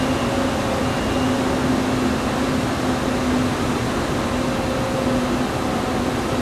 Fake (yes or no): no